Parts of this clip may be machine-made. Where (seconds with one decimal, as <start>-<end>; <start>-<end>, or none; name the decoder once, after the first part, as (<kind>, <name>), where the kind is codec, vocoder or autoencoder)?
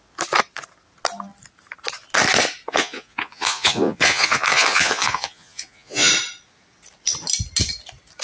2.7-6.1 (vocoder, Vocos)